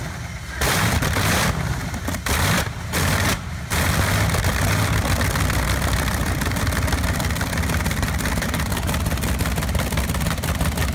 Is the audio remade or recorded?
remade